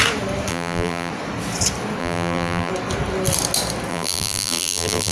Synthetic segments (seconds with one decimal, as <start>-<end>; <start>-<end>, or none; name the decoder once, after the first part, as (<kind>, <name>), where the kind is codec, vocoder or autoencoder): 0.5-1.1 (vocoder, BigVGAN v2); 2.0-2.7; 3.9-5.1